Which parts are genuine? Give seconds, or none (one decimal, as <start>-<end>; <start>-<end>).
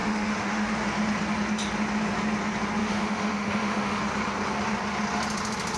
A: 0.7-2.8; 4.0-5.8